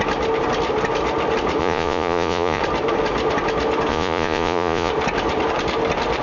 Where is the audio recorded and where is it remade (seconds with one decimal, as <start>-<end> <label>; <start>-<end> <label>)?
0.0-1.6 recorded; 1.6-2.6 remade; 2.6-3.9 recorded; 3.9-4.9 remade; 4.9-6.2 recorded